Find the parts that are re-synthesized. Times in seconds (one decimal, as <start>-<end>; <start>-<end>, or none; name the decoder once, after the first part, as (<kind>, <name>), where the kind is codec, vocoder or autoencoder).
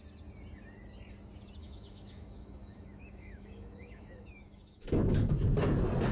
1.6-5.3 (autoencoder, DAC-VAE)